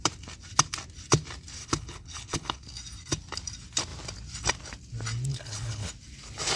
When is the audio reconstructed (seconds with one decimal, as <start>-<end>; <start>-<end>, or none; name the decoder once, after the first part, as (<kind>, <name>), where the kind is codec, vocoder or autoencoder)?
1.6-2.6 (codec, HILCodec); 5.3-5.9